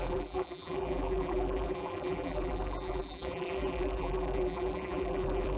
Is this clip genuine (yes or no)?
no